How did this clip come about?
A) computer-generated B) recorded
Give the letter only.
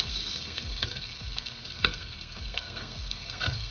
A